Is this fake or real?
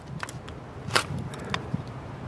real